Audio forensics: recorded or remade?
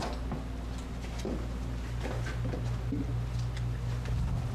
recorded